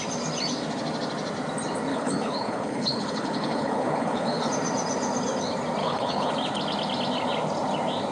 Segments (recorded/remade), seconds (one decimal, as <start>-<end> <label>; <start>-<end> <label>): 0.0-1.9 recorded; 1.9-4.5 remade; 4.5-5.8 recorded; 5.8-6.3 remade; 6.3-8.1 recorded